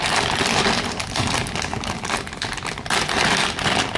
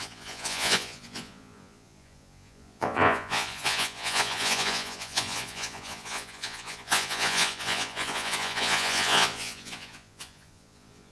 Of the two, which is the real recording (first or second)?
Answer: first